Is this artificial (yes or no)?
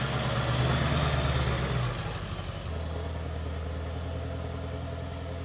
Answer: no